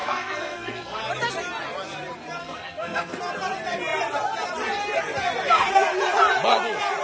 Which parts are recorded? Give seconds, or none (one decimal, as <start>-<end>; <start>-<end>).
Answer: 1.0-2.4; 3.2-7.0